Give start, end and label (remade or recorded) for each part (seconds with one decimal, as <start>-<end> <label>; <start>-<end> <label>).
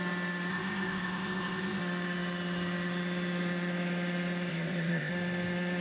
0.0-0.5 recorded; 0.5-1.8 remade; 1.8-4.5 recorded; 4.5-5.1 remade; 5.1-5.8 recorded